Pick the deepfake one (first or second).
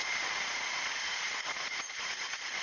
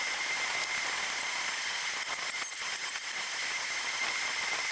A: first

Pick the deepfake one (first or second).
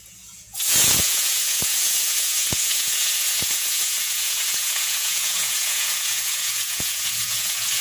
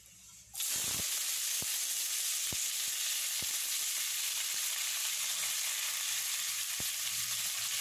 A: first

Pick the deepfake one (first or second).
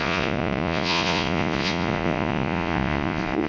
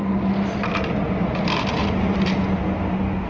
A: first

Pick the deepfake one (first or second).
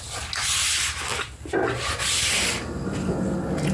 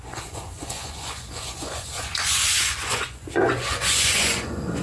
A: second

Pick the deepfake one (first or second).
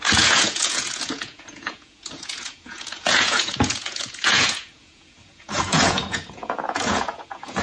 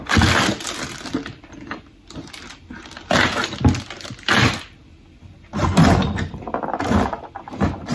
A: first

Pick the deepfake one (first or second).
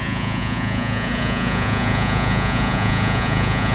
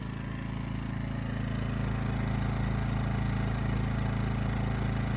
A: first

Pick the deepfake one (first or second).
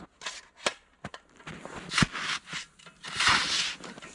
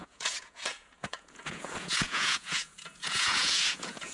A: second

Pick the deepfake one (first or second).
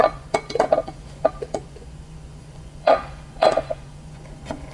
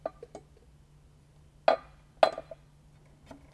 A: first